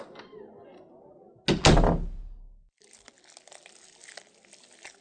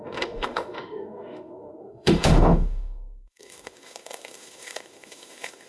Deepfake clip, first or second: second